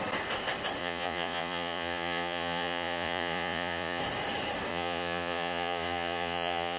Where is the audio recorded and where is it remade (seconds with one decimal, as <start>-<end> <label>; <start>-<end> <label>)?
0.0-0.8 recorded; 0.8-4.0 remade; 4.0-4.7 recorded; 4.7-6.8 remade